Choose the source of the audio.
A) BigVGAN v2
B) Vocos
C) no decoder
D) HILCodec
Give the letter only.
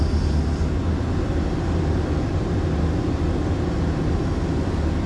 C